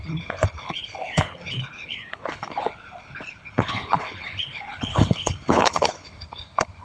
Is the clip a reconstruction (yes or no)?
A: yes